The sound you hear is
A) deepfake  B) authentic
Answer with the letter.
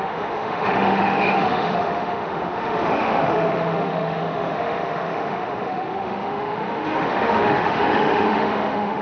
A